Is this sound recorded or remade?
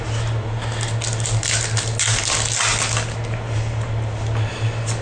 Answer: recorded